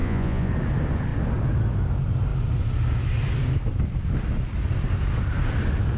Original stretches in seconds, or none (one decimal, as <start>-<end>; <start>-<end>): 0.5-6.0